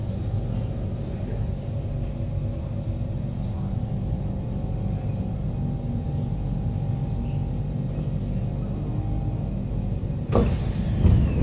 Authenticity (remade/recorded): recorded